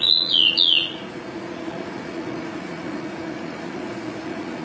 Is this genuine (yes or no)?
no